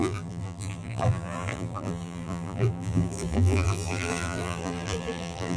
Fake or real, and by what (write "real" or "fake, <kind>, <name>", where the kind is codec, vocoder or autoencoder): fake, vocoder, BigVGAN v2